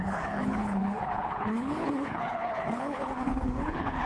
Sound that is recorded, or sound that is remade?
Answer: remade